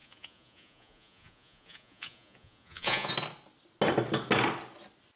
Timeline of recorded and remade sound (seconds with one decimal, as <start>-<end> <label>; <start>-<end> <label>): 0.0-3.1 remade; 3.1-5.2 recorded